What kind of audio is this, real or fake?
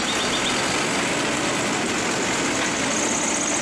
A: real